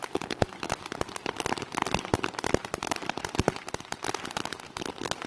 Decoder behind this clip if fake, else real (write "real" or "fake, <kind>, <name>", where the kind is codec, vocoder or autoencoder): real